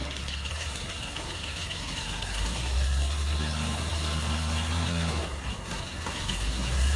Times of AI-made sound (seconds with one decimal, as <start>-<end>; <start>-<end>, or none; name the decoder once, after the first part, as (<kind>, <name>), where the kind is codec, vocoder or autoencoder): 0.0-7.0 (codec, SNAC)